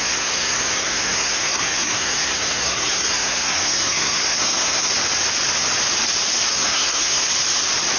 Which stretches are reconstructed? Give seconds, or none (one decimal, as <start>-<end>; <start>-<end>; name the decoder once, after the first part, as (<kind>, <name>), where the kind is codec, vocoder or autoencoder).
0.0-4.9 (codec, SNAC); 6.5-7.2

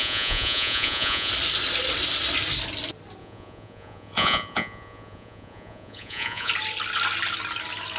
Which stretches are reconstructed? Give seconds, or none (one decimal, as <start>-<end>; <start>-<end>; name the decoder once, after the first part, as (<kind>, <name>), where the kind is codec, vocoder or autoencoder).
0.0-1.3 (vocoder, Vocos); 3.2-6.5

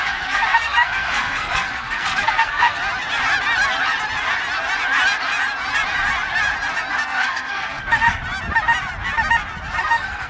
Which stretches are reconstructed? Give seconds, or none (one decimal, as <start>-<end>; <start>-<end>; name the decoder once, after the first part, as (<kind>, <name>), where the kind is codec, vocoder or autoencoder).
0.0-2.8 (codec, SNAC); 7.0-8.2; 9.8-10.3

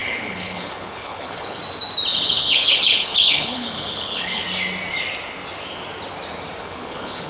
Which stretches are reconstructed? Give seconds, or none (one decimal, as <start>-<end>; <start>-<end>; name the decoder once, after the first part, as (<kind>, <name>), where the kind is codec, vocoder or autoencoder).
0.0-1.6 (codec, HILCodec); 2.1-4.4; 6.6-7.3

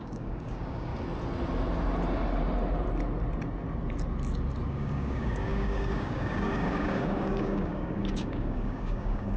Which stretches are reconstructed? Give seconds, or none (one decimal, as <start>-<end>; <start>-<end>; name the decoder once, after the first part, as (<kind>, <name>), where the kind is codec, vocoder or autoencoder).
0.0-0.9 (codec, DAC); 4.7-9.4

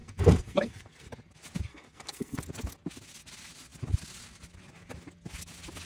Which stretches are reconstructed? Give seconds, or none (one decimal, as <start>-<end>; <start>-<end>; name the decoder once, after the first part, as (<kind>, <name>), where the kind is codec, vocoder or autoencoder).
0.0-1.1 (codec, SNAC); 1.7-2.4

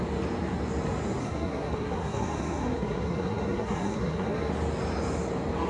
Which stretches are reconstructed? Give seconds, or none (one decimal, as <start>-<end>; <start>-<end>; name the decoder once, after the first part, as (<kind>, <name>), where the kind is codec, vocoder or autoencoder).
1.2-4.5 (codec, SNAC)

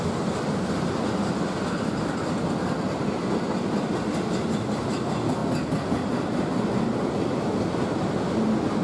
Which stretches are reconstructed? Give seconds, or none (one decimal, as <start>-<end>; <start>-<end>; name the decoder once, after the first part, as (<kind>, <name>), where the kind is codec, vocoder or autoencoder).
none